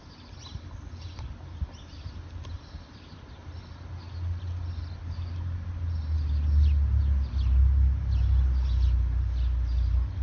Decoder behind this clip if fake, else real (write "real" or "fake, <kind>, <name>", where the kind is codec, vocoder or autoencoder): real